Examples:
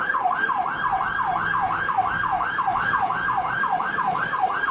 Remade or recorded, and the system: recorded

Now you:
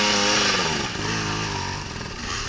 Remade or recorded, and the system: recorded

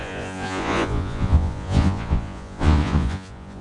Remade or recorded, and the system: remade, vocoder, Vocos